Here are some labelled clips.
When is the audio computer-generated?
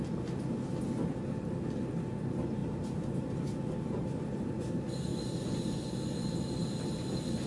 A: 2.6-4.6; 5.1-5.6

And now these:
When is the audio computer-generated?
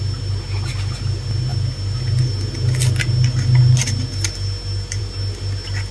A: none